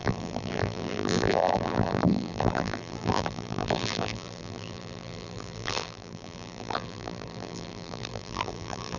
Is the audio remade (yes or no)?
yes